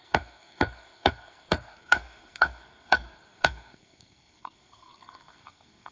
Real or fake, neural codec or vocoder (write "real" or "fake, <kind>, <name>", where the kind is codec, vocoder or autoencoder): fake, codec, SNAC